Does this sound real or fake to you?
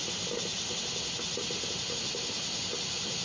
real